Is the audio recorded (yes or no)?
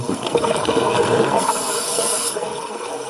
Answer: no